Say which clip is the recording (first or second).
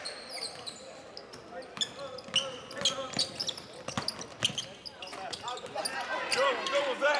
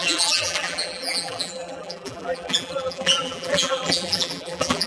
first